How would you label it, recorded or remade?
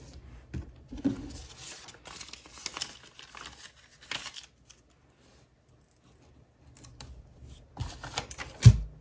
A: recorded